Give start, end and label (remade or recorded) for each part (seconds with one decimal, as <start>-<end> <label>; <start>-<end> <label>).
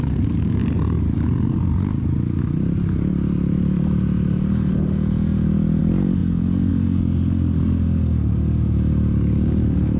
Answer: 0.0-10.0 recorded